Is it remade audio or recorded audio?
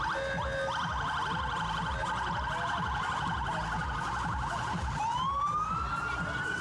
recorded